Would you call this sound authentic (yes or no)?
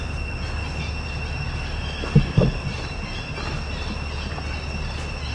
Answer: yes